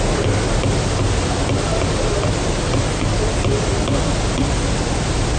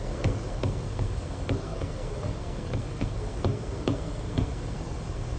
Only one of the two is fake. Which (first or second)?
second